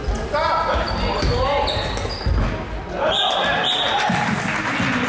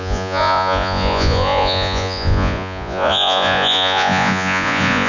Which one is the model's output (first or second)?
second